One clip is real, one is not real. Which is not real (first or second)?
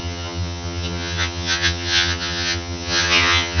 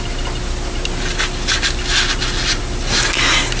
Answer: first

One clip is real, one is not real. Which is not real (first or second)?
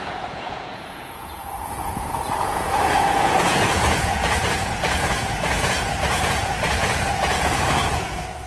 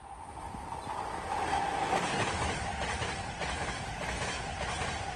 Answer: first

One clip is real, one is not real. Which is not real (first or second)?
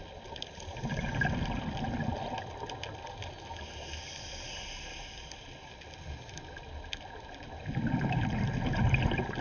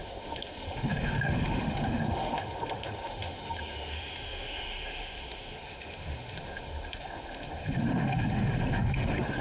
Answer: second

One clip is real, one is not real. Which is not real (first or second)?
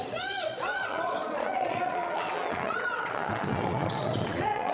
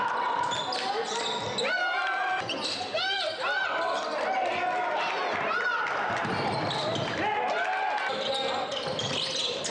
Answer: first